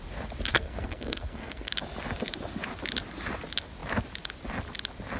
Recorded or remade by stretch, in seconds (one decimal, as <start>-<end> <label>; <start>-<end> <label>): 0.0-0.5 recorded; 0.5-1.7 remade; 1.7-5.2 recorded